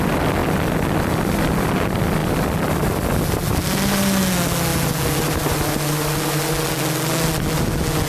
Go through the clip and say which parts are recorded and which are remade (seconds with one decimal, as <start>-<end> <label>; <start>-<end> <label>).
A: 0.0-8.1 recorded